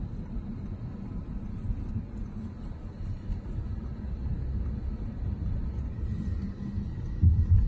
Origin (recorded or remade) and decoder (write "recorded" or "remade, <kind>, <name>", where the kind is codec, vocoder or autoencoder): recorded